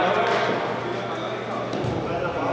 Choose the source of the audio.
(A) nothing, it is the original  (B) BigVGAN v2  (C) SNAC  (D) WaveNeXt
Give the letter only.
A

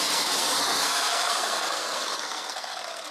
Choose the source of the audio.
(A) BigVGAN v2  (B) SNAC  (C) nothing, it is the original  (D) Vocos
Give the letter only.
B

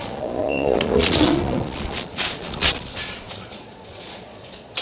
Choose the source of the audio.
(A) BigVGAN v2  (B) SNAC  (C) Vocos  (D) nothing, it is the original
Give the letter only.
C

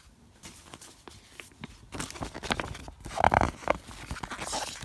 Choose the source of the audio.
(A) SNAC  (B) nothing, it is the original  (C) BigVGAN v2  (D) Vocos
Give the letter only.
B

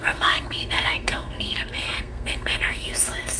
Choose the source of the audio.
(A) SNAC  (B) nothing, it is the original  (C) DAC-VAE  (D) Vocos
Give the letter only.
A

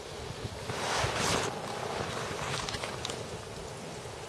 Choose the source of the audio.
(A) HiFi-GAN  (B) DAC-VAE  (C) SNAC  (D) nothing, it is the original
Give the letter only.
D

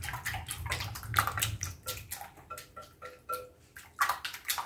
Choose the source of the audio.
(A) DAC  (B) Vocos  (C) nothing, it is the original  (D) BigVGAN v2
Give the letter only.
C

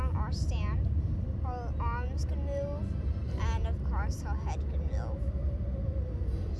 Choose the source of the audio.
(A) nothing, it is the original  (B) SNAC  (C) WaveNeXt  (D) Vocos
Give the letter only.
A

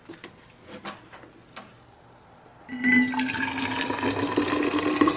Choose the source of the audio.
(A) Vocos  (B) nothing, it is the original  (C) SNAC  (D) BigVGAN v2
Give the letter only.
B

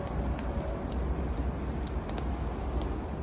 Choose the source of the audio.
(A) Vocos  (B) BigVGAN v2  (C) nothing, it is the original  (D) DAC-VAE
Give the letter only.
C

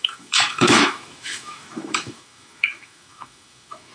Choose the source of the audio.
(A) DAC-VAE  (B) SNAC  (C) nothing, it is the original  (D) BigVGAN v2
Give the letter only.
A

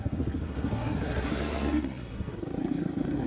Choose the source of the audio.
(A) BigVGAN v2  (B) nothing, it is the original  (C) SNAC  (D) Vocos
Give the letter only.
C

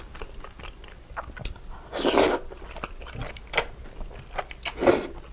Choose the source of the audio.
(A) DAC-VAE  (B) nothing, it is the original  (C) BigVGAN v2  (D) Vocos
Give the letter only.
B